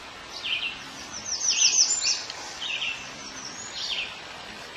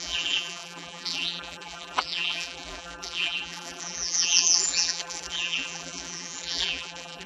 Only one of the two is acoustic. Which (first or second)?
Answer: first